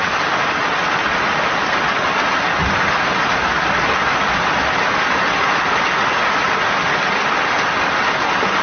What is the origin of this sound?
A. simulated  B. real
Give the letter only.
B